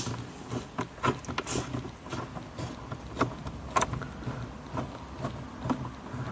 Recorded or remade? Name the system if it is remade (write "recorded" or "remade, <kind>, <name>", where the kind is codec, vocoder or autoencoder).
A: recorded